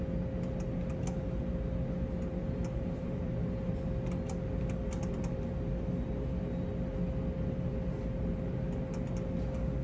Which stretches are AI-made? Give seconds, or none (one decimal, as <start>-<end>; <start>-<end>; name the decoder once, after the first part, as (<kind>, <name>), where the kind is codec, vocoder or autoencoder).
2.4-3.7 (vocoder, BigVGAN v2)